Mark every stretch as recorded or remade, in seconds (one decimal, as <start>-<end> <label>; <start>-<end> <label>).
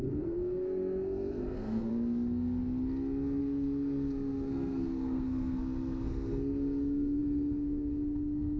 0.0-1.9 remade; 1.9-3.4 recorded; 3.4-8.6 remade